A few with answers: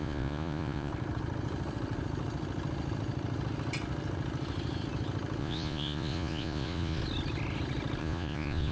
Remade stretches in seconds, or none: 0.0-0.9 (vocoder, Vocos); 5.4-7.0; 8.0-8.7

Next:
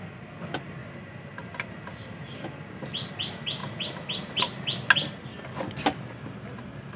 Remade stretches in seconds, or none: 0.8-3.1 (vocoder, BigVGAN v2)

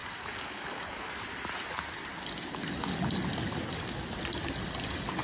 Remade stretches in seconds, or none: 0.0-1.1 (codec, DAC)

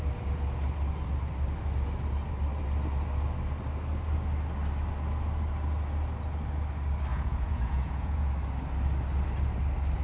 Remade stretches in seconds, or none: 7.1-8.3 (vocoder, Vocos)

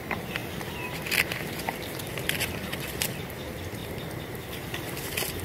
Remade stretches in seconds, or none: 0.0-0.4 (vocoder, BigVGAN v2); 1.6-3.8